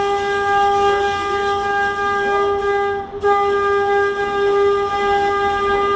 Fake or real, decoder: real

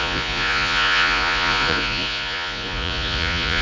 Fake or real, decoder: fake, vocoder, Vocos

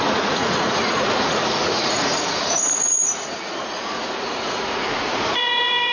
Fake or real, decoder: fake, vocoder, Vocos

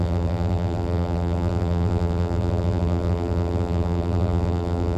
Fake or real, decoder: fake, vocoder, BigVGAN v2